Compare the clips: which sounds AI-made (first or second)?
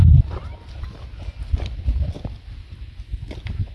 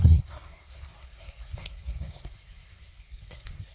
second